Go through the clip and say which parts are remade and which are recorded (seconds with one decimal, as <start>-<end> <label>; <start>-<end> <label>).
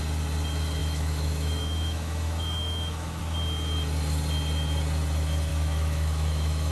0.0-0.8 recorded; 0.8-3.2 remade; 3.2-5.5 recorded; 5.5-6.7 remade